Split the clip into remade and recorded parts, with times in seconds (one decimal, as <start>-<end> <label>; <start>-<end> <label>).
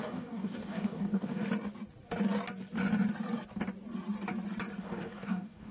0.0-1.4 remade; 1.4-4.8 recorded; 4.8-5.7 remade